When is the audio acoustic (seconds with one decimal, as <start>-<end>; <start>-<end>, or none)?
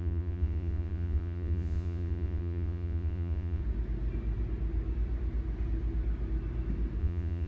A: 3.6-7.0